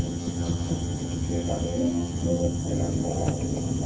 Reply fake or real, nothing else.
fake